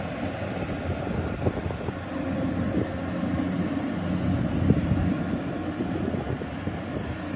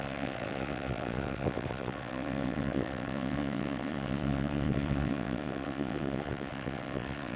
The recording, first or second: first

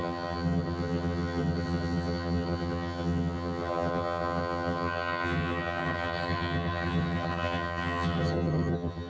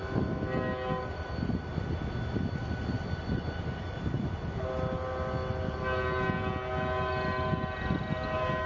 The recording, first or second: second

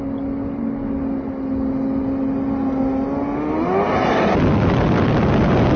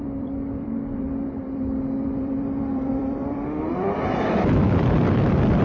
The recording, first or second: first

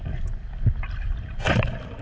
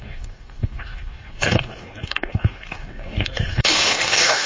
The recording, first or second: first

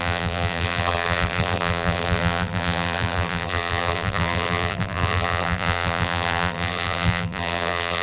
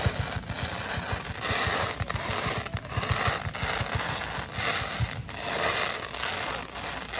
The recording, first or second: second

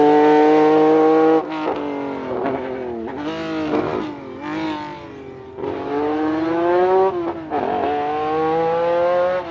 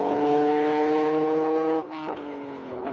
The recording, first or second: first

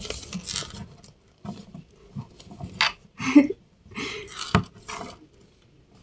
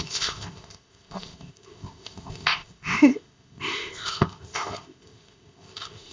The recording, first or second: first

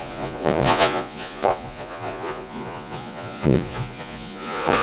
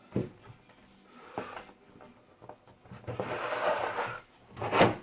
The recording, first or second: second